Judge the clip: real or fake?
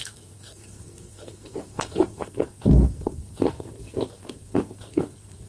fake